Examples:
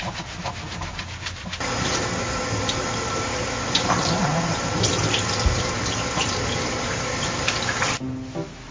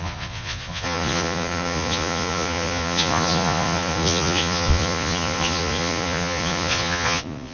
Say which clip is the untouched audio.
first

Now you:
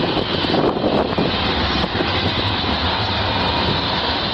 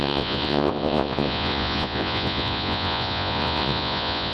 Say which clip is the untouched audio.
first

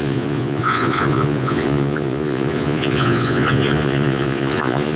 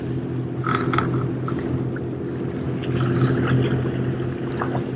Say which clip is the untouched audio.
second